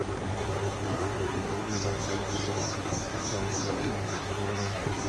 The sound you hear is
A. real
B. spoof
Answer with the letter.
B